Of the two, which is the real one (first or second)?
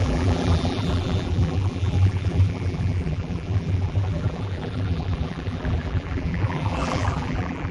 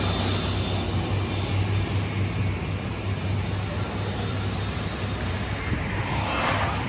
second